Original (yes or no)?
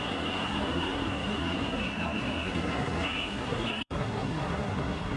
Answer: no